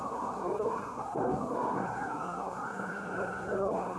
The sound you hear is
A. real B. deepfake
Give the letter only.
B